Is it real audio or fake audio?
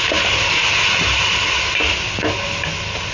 real